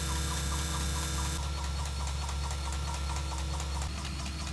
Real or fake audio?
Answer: real